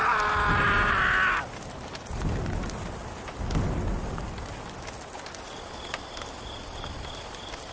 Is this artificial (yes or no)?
no